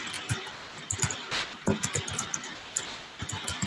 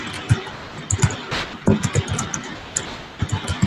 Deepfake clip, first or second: first